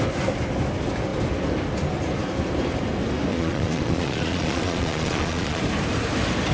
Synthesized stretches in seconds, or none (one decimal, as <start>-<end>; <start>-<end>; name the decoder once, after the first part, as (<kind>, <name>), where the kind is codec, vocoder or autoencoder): 3.3-5.6 (vocoder, Vocos)